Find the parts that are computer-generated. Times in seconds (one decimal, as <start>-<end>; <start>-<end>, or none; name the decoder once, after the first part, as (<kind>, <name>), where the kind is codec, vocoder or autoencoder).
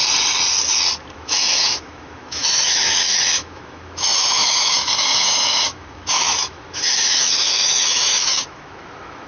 1.1-9.3 (autoencoder, DAC-VAE)